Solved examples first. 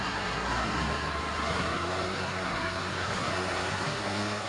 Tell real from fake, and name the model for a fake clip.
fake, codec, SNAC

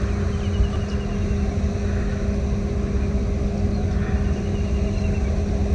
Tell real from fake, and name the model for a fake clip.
real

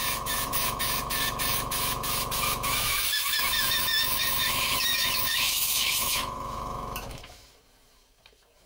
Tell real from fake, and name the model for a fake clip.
fake, autoencoder, DAC-VAE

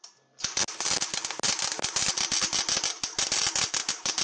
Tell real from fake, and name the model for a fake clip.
real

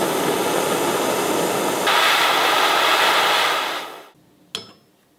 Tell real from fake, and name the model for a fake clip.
real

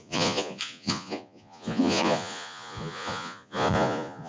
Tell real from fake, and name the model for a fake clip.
fake, vocoder, Vocos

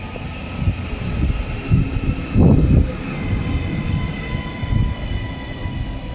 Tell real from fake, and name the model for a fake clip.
real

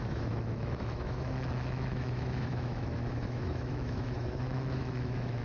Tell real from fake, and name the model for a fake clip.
fake, autoencoder, DAC-VAE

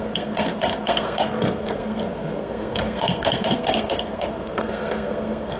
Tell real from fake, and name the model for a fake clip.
fake, codec, SNAC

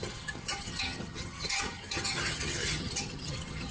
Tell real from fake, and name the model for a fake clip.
fake, vocoder, HiFi-GAN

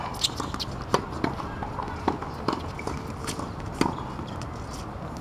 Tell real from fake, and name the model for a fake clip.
real